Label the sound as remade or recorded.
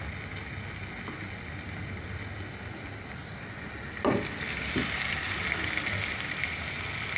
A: recorded